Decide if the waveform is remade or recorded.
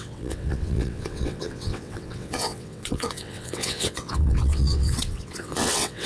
remade